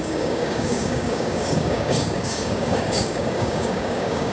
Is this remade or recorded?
remade